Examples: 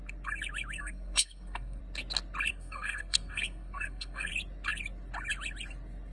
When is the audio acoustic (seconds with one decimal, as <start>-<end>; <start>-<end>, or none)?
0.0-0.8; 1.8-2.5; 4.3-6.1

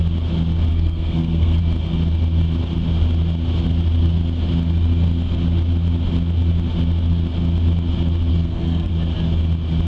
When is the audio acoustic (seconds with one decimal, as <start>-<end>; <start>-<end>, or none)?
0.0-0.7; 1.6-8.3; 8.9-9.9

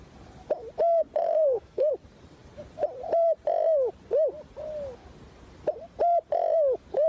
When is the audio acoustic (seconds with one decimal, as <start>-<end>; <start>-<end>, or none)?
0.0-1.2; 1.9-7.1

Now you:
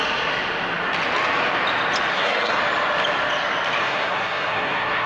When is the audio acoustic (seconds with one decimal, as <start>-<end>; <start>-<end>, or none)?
0.0-2.1; 2.6-3.8